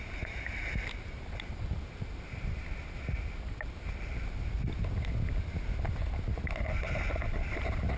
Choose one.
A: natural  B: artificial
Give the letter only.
A